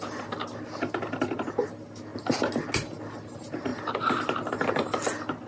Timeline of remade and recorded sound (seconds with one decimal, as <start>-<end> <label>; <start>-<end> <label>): 0.0-5.5 recorded